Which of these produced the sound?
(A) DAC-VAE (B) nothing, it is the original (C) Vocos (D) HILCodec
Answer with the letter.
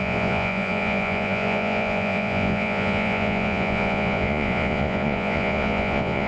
C